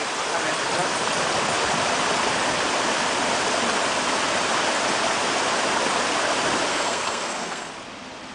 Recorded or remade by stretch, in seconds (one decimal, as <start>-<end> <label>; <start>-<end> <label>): 0.0-6.7 recorded; 6.7-7.7 remade; 7.7-8.3 recorded